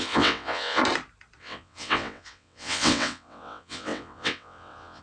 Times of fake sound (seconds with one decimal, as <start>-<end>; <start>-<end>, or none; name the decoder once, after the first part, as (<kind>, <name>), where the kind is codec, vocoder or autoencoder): 0.0-0.8 (vocoder, WaveNeXt); 1.4-5.0